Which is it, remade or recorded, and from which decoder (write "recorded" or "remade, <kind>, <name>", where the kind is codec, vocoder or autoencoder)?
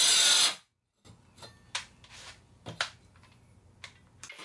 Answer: recorded